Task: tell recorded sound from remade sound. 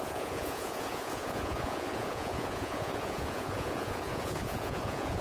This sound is remade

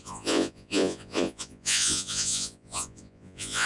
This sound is remade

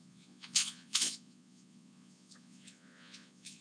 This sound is remade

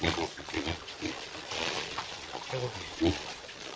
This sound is remade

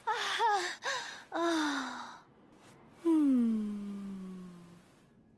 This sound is recorded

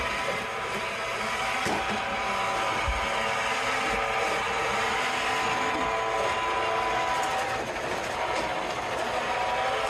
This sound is recorded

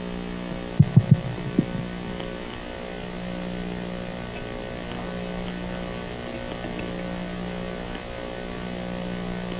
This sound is recorded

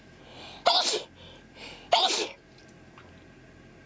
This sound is recorded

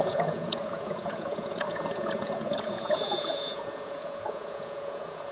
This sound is remade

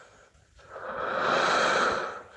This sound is recorded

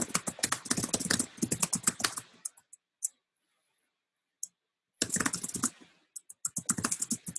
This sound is recorded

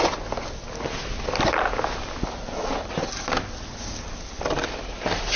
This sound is recorded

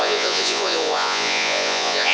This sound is remade